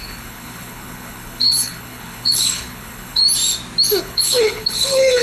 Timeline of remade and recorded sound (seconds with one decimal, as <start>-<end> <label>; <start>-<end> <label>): 0.0-3.2 remade; 3.2-4.0 recorded; 4.0-5.2 remade